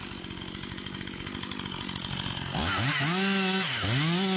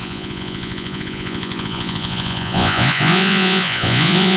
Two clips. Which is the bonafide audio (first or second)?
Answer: first